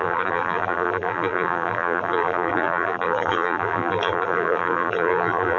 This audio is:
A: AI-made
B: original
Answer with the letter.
A